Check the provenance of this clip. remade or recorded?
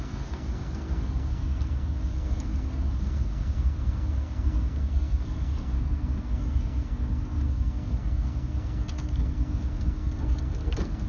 remade